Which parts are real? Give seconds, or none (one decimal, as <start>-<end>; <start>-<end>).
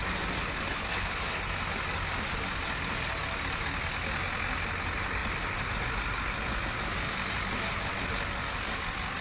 0.0-0.9; 1.4-9.2